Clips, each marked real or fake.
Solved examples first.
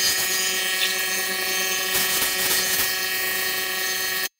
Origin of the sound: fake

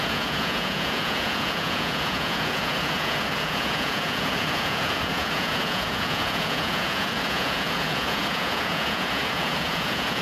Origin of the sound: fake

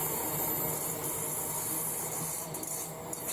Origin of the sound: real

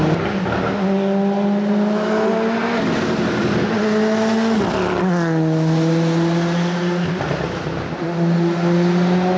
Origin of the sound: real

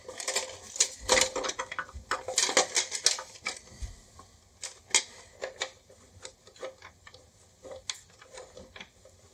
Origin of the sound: real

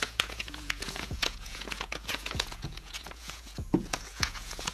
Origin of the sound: fake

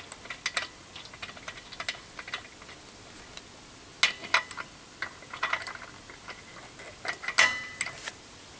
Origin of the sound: real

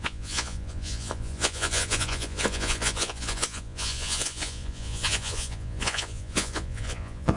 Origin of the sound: fake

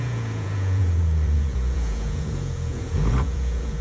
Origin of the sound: fake